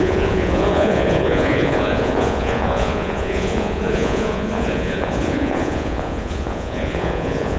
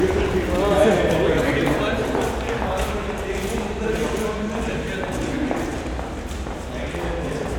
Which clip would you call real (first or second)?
second